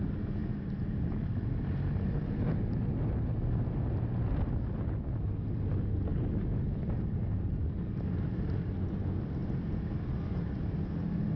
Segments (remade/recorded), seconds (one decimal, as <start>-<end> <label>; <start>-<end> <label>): 0.0-11.4 recorded